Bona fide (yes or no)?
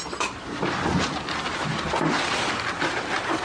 yes